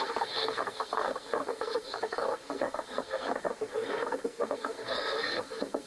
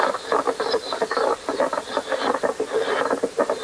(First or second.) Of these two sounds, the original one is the second